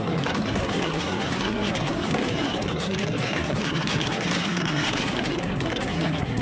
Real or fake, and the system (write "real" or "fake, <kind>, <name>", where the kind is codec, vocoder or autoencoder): fake, codec, SNAC